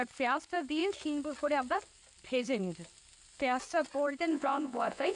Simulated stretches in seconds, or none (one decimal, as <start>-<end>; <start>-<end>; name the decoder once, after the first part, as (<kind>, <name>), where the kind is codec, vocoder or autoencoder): 4.3-5.2 (vocoder, Vocos)